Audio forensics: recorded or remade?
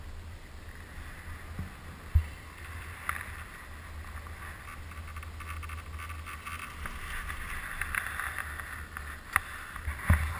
recorded